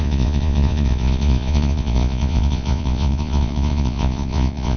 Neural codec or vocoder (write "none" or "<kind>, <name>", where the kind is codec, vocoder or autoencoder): vocoder, Vocos